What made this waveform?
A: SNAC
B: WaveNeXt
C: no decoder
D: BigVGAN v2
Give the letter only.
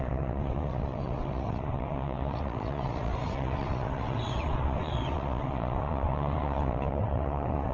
B